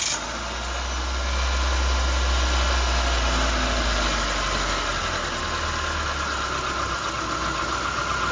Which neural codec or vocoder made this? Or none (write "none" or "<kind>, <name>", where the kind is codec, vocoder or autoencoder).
none